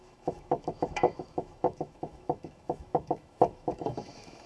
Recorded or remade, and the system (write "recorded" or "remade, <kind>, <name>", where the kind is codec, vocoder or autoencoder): remade, autoencoder, DAC-VAE